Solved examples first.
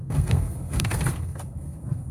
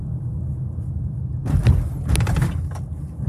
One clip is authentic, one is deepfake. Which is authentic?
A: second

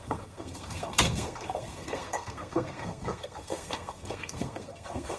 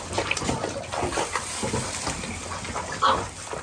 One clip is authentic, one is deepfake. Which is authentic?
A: second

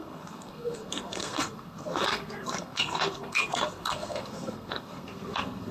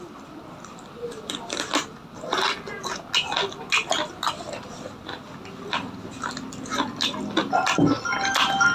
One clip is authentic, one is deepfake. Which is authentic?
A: second